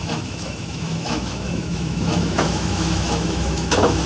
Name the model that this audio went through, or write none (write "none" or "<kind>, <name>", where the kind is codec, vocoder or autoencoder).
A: autoencoder, DAC-VAE